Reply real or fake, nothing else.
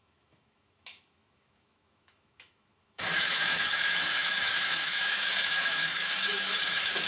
fake